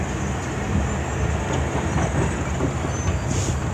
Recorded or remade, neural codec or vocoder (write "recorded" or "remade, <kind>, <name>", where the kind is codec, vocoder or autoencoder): recorded